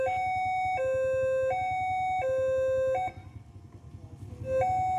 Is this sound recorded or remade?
recorded